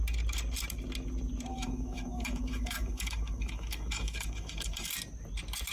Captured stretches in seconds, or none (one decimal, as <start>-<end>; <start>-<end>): 0.0-1.5; 4.9-5.7